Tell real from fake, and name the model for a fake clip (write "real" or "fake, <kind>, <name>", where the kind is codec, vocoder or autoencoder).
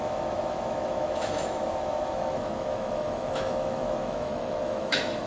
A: fake, autoencoder, DAC-VAE